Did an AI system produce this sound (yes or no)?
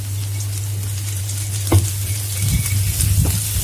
no